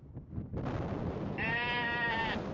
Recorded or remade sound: recorded